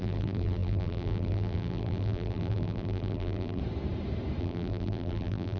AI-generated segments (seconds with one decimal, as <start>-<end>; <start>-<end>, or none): 0.0-3.6; 4.4-5.6